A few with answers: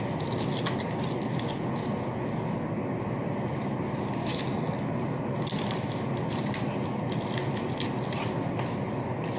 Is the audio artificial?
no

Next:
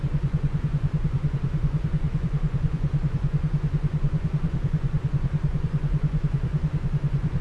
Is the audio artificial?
yes